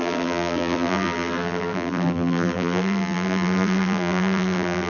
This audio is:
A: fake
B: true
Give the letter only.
A